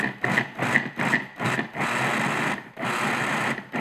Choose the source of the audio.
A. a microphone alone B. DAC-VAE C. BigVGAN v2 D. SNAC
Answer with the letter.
A